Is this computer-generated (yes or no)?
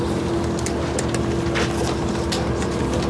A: no